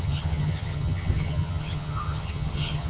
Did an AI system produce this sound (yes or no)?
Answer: yes